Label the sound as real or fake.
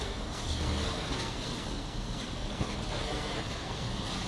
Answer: fake